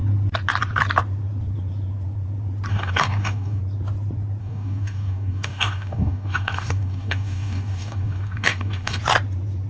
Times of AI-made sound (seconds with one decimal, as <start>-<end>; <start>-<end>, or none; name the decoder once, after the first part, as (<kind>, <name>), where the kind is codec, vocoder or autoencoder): 2.7-3.6 (codec, DAC); 4.4-9.0